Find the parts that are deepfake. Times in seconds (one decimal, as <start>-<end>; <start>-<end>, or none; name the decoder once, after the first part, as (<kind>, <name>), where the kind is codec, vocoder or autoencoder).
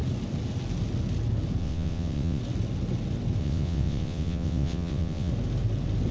1.6-2.4 (vocoder, WaveNeXt); 3.4-5.3